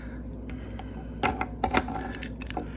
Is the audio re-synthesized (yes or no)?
no